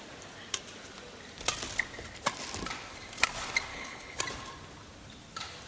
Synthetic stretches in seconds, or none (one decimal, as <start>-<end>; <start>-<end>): 3.7-4.2